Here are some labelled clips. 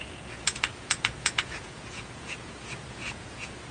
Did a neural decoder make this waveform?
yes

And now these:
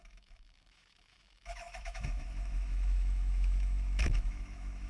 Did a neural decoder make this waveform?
yes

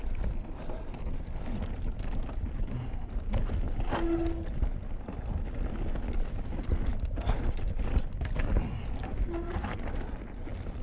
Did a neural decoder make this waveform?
no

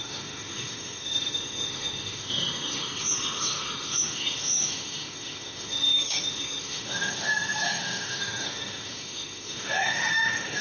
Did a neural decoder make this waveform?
yes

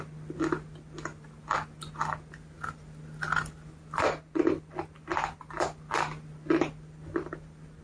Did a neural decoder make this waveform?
no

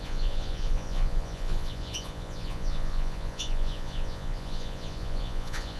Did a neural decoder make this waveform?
yes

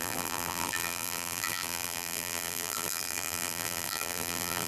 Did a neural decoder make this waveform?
yes